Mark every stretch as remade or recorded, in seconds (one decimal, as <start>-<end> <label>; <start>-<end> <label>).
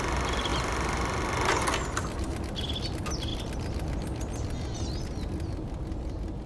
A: 0.0-6.5 recorded